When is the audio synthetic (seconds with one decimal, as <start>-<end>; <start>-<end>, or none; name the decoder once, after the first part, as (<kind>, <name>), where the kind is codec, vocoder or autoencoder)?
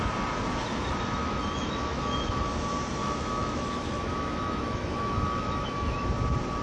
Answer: 1.2-2.4 (autoencoder, DAC-VAE); 3.0-6.1